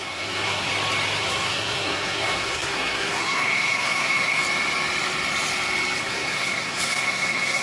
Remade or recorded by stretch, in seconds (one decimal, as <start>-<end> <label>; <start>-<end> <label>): 0.0-0.7 remade; 0.7-1.2 recorded; 1.2-4.4 remade; 4.4-6.0 recorded; 6.0-7.6 remade